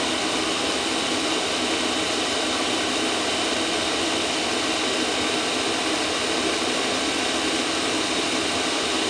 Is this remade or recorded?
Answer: recorded